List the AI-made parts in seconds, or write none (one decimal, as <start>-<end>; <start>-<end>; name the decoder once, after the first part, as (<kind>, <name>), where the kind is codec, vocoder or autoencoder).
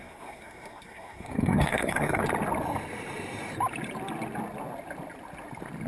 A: 0.0-2.2 (codec, SNAC)